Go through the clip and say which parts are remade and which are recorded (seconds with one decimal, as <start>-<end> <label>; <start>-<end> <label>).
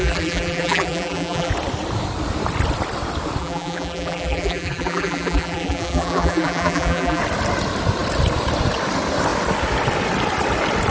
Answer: 0.0-1.5 remade; 1.5-3.4 recorded; 3.4-7.2 remade; 7.2-10.9 recorded